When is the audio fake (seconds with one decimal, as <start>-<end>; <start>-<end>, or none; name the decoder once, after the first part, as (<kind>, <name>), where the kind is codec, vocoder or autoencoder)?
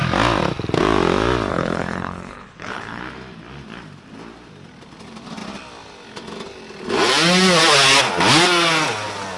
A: 1.5-3.0 (codec, HILCodec)